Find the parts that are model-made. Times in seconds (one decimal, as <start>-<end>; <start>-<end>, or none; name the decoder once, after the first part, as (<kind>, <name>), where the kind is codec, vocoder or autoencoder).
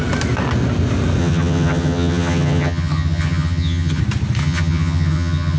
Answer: 1.2-4.0 (vocoder, HiFi-GAN); 4.4-5.6